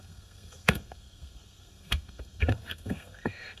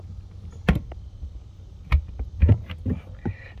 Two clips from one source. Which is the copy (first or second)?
first